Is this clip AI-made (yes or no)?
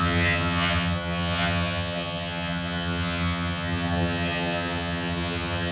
yes